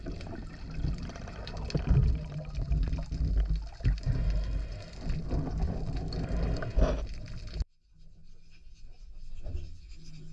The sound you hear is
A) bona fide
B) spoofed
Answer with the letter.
A